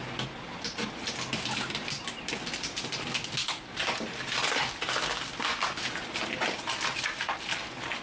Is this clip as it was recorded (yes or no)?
yes